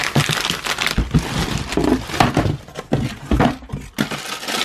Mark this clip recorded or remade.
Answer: recorded